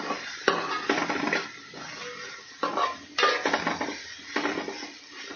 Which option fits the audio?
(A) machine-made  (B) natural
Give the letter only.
B